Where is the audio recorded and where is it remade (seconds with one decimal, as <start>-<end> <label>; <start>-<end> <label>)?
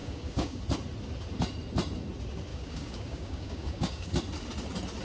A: 0.0-0.6 remade; 0.6-2.5 recorded; 2.5-4.1 remade; 4.1-5.0 recorded